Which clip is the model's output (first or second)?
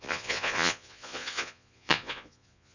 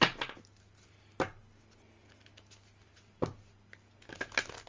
first